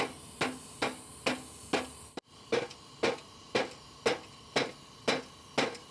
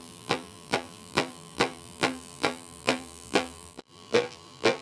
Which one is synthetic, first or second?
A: second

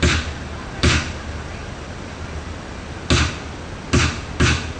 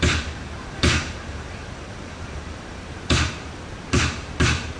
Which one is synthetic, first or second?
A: second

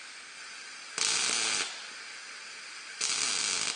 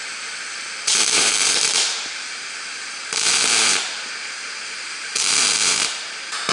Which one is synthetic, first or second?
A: second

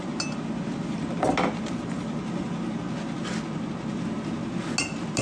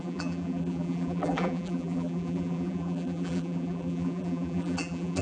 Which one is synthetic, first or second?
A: second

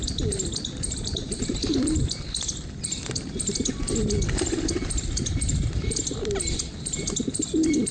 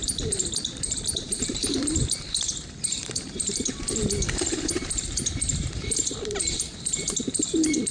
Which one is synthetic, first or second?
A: second